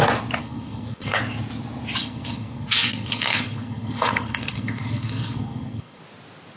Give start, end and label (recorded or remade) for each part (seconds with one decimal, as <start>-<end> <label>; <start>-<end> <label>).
0.0-0.4 recorded; 0.4-1.2 remade; 1.2-2.0 recorded; 2.0-6.0 remade; 6.0-6.6 recorded

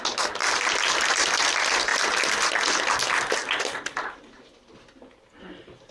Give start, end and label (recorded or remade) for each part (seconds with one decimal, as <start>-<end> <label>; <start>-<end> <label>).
0.0-5.9 recorded